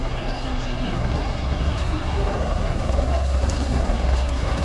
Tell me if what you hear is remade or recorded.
remade